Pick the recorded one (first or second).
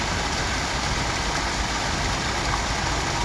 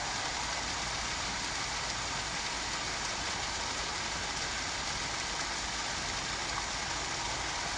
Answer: second